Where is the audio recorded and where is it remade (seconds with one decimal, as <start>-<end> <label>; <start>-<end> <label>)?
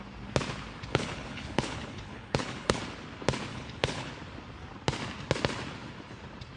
0.0-0.9 recorded; 0.9-2.8 remade; 2.8-3.5 recorded; 3.5-4.1 remade; 4.1-6.6 recorded